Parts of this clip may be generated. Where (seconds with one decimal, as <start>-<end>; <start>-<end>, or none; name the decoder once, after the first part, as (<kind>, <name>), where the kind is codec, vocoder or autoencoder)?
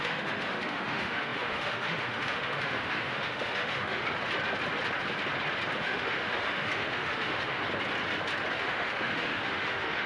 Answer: 0.0-4.0 (autoencoder, DAC-VAE); 5.8-7.6; 8.6-10.1